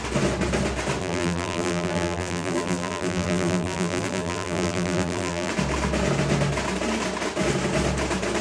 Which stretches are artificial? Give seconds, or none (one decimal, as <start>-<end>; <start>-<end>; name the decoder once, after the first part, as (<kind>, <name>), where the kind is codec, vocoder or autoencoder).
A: 1.0-5.5 (vocoder, BigVGAN v2)